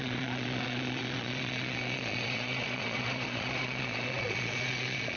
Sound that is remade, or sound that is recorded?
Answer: remade